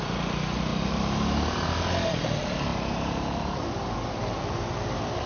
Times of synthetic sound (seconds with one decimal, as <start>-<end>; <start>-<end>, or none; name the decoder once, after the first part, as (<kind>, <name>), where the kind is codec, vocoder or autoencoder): none